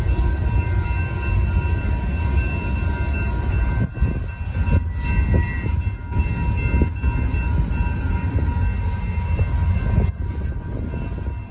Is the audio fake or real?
real